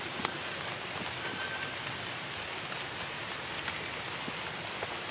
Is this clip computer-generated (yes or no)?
no